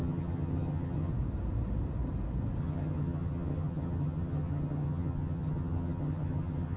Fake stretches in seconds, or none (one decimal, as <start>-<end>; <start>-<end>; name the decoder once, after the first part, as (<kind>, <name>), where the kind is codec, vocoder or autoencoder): 0.0-1.1 (vocoder, HiFi-GAN); 2.6-6.8